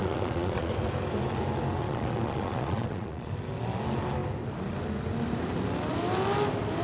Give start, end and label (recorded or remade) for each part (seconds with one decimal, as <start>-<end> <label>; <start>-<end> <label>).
0.0-0.7 remade; 0.7-1.8 recorded; 1.8-3.3 remade; 3.3-6.8 recorded